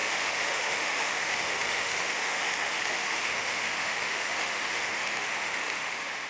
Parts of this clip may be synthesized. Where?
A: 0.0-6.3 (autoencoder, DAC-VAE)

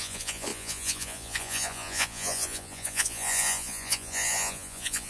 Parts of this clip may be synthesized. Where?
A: 0.0-5.1 (vocoder, Vocos)

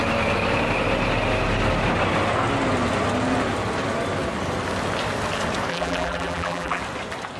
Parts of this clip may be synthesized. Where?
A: 5.7-6.8 (vocoder, BigVGAN v2)

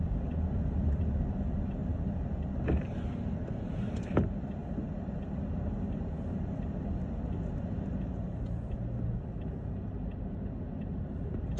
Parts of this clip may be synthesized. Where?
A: none